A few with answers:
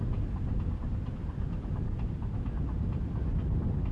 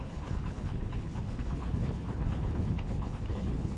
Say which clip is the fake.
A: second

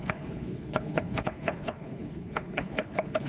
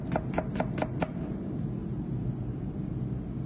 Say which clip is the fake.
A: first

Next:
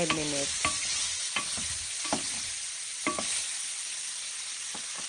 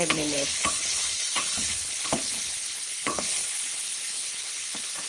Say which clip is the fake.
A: second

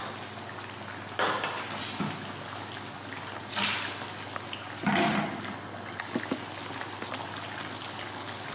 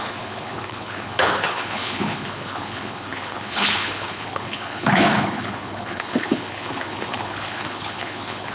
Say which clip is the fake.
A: second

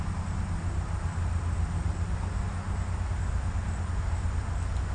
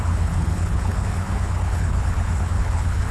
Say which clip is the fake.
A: second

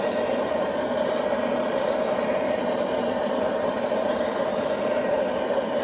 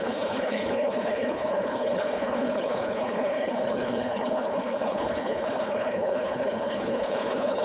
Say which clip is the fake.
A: second